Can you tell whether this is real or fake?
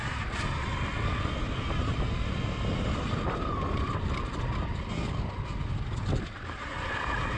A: real